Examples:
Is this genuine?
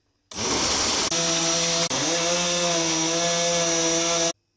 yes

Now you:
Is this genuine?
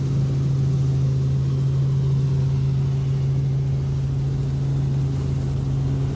yes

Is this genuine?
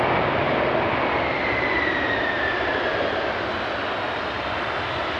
yes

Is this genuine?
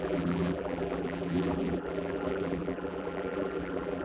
no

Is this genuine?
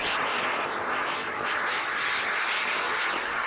yes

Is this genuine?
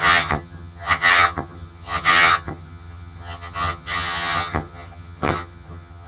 no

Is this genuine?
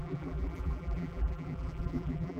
no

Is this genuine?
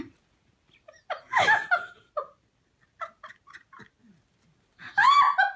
yes